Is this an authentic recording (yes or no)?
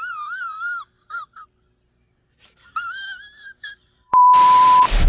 no